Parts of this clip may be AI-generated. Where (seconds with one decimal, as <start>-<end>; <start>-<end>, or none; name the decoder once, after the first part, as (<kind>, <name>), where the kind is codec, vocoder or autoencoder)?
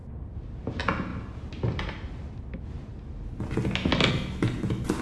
none